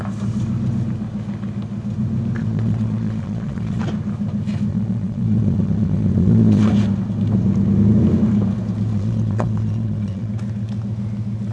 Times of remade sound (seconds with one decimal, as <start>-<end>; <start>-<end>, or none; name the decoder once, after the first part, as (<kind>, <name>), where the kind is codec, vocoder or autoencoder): 2.4-3.8 (vocoder, Vocos); 4.7-6.7; 8.9-10.3

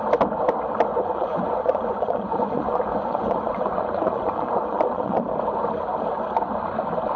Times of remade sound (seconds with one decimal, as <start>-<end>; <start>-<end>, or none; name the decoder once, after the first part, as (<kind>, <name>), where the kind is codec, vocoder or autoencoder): 0.9-5.2 (vocoder, Vocos)

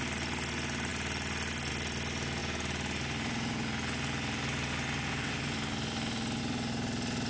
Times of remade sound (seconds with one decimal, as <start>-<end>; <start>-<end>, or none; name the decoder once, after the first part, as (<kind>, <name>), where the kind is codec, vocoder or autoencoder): none

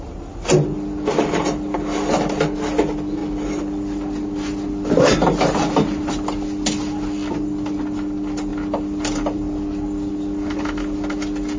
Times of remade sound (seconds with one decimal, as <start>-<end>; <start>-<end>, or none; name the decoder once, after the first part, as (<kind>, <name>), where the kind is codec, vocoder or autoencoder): none

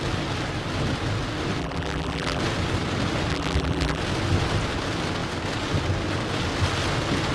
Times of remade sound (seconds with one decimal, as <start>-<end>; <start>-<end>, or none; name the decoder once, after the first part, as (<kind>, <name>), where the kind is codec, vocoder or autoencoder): 1.6-2.4 (vocoder, BigVGAN v2); 3.3-4.0

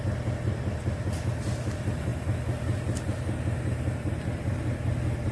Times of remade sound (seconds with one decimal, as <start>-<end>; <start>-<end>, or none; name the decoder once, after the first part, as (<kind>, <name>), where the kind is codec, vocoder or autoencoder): none

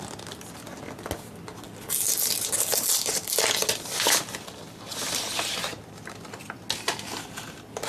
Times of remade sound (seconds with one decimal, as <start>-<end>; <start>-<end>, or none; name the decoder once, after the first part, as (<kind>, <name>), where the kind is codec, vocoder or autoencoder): 3.6-6.6 (vocoder, BigVGAN v2)

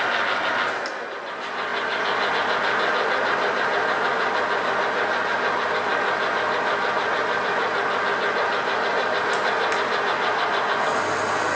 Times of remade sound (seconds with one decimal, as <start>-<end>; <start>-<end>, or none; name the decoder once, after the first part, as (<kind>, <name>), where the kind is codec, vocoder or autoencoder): none